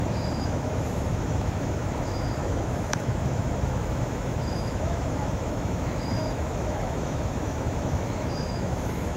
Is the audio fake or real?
fake